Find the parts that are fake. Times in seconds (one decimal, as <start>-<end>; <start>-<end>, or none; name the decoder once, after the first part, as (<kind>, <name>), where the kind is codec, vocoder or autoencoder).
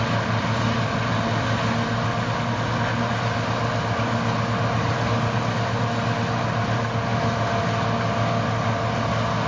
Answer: none